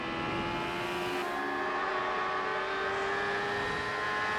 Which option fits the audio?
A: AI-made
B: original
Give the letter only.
B